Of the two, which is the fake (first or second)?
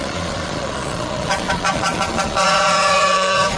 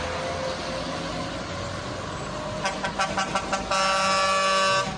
first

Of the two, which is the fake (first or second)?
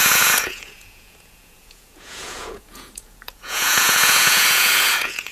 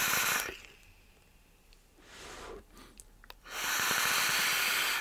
first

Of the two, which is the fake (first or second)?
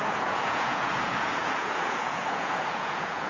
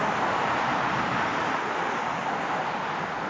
first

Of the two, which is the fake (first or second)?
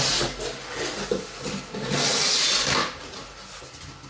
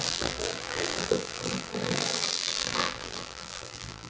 second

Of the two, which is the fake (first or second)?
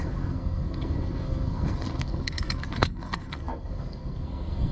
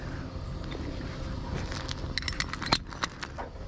first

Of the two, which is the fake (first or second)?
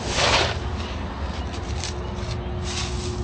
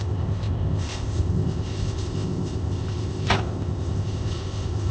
second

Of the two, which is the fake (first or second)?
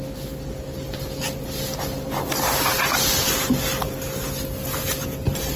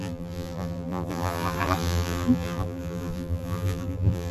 second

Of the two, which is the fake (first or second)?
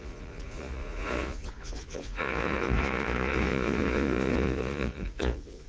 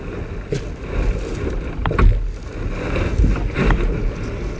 first